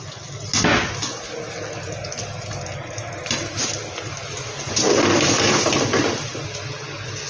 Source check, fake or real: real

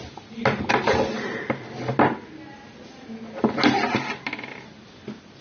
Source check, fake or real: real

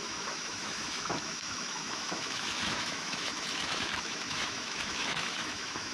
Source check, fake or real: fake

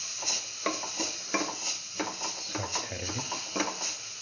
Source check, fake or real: real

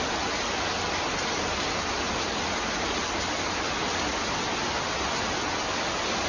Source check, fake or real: real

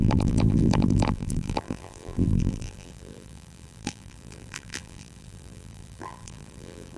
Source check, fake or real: fake